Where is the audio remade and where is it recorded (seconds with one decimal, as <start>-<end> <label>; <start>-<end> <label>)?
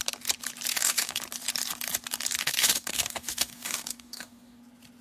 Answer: 0.0-0.7 recorded; 0.7-1.2 remade; 1.2-2.4 recorded; 2.4-4.6 remade; 4.6-5.0 recorded